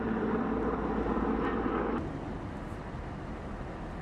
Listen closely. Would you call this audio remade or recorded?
recorded